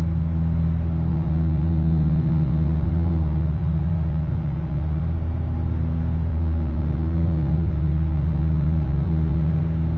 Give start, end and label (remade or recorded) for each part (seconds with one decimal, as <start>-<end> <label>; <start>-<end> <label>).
0.0-1.1 recorded; 1.1-5.0 remade; 5.0-6.3 recorded; 6.3-9.6 remade; 9.6-10.0 recorded

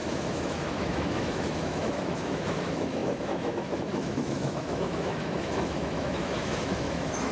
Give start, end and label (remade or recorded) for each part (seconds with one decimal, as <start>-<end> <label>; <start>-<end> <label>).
0.0-7.3 remade

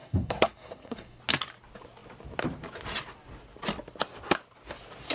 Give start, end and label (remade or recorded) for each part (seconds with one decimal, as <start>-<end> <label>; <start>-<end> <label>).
0.0-1.2 remade; 1.2-5.1 recorded

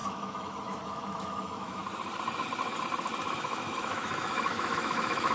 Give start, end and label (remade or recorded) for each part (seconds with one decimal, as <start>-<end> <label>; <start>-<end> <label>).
0.0-1.8 remade; 1.8-3.3 recorded; 3.3-5.3 remade

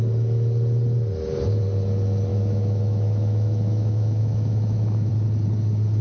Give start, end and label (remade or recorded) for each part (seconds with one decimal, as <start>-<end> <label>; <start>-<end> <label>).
0.0-2.3 recorded; 2.3-5.1 remade; 5.1-6.0 recorded

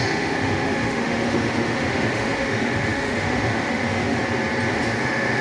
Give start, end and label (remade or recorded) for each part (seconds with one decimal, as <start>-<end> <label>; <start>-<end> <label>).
0.0-4.2 remade; 4.2-4.7 recorded; 4.7-5.4 remade

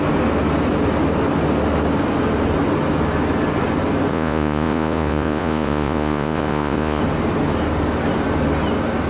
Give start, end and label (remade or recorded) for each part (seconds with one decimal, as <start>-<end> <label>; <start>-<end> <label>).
0.0-4.1 recorded; 4.1-7.0 remade; 7.0-9.1 recorded

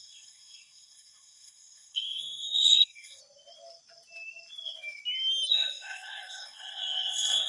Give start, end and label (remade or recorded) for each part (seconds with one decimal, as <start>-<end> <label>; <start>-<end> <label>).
0.0-3.2 remade; 3.2-5.5 recorded; 5.5-7.5 remade